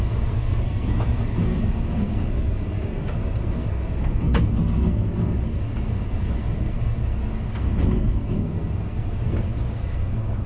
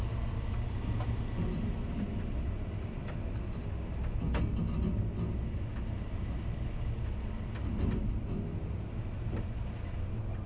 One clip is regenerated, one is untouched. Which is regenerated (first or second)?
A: first